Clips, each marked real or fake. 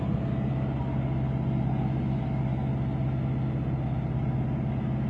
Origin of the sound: real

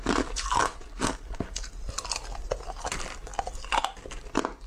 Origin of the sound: real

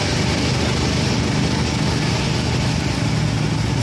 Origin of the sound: real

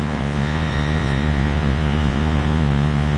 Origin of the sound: fake